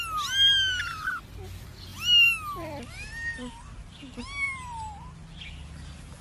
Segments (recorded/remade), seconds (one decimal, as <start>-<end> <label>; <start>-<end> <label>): 0.0-6.2 recorded